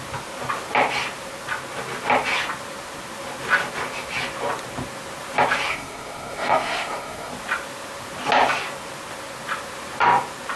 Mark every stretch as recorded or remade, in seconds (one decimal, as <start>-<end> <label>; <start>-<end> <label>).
0.0-5.7 recorded; 5.7-7.3 remade; 7.3-10.6 recorded